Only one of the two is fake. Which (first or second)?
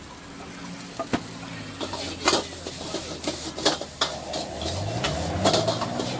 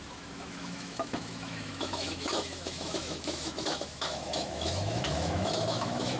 second